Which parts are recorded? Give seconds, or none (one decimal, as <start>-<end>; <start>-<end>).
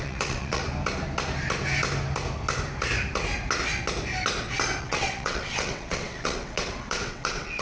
0.6-4.8